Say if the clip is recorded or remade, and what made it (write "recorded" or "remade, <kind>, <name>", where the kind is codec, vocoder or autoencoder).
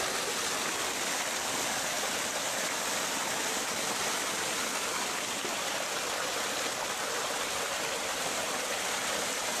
recorded